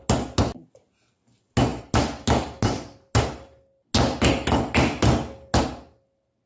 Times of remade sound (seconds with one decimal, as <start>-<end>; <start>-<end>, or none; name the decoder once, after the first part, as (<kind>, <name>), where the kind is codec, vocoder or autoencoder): none